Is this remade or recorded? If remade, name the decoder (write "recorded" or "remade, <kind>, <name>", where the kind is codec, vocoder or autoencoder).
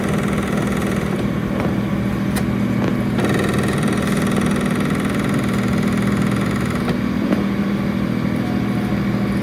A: recorded